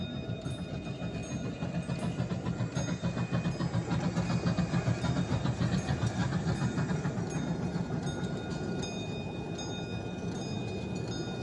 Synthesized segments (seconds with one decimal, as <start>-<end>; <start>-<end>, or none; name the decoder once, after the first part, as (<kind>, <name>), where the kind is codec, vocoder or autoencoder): none